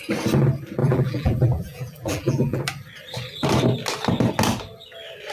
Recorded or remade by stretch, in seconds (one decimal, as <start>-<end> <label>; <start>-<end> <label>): 0.0-0.8 recorded; 0.8-2.6 remade; 2.6-5.3 recorded